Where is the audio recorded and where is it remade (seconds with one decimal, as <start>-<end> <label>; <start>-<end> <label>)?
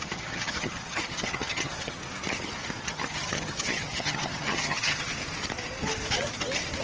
0.0-2.0 remade; 2.0-2.8 recorded; 2.8-5.1 remade; 5.1-6.8 recorded